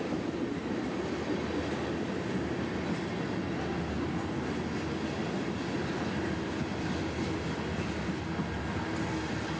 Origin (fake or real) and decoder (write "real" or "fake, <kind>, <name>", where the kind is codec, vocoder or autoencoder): real